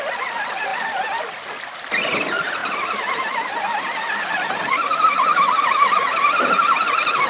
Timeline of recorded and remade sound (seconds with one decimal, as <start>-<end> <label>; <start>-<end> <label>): 0.0-7.3 recorded